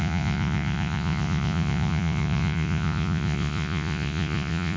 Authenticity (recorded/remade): remade